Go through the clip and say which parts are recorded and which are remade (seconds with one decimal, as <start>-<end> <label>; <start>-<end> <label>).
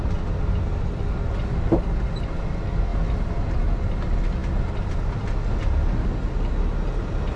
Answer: 0.0-7.4 recorded